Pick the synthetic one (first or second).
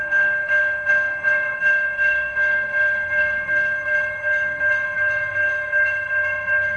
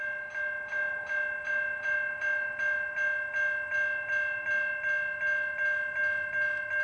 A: first